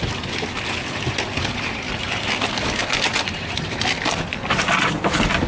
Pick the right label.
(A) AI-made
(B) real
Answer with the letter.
B